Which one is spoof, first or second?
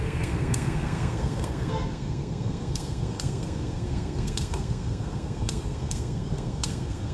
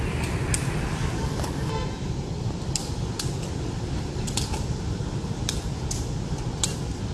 first